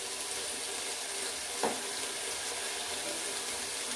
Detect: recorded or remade recorded